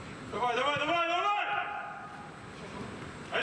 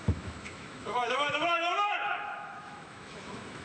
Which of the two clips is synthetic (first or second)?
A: second